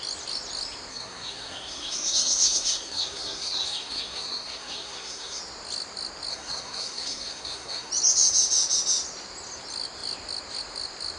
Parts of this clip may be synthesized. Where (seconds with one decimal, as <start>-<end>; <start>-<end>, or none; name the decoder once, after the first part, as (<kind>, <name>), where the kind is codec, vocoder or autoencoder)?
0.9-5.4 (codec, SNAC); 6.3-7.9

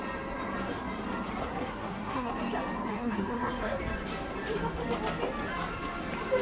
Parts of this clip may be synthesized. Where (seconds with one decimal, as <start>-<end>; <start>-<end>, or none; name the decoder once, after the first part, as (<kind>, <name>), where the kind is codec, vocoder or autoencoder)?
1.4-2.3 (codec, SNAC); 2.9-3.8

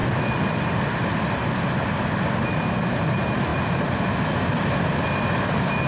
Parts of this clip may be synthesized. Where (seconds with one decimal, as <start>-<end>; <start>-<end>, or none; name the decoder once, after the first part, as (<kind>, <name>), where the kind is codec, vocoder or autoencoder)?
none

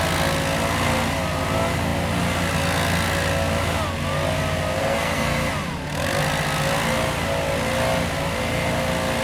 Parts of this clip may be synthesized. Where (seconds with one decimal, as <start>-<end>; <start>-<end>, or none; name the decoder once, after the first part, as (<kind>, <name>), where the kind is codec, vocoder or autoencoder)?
4.8-5.5 (codec, SNAC)

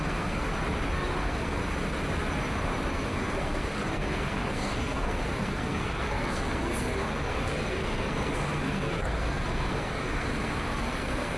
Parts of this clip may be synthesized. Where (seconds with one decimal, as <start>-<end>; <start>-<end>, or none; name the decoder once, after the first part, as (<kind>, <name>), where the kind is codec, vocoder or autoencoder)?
0.0-0.5 (codec, SNAC); 1.2-1.6; 2.9-11.4

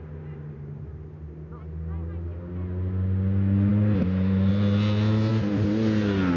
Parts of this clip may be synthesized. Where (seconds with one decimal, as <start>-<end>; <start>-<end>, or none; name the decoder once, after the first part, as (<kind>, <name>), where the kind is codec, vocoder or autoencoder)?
none